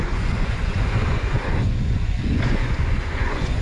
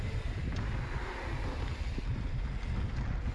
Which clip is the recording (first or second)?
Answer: second